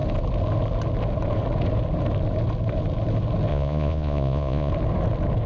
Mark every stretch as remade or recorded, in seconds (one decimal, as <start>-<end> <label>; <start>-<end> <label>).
0.0-3.5 recorded; 3.5-4.7 remade; 4.7-5.5 recorded